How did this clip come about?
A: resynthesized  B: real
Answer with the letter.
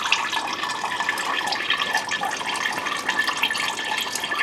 B